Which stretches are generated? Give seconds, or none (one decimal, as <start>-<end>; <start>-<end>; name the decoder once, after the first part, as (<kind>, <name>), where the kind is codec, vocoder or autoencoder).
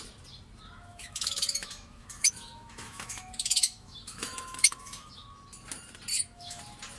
0.9-5.1 (autoencoder, DAC-VAE); 6.1-6.6